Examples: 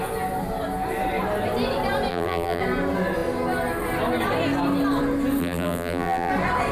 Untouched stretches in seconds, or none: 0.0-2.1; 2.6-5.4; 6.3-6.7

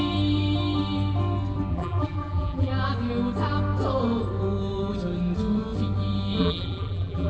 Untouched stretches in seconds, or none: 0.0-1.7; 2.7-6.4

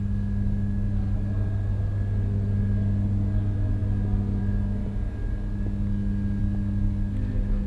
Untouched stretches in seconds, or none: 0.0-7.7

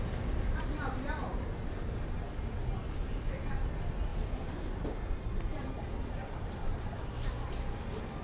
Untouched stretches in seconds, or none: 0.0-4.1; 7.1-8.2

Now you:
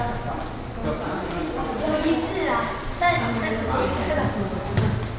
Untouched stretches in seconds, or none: 0.0-3.0; 4.3-5.2